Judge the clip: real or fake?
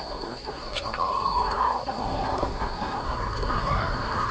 fake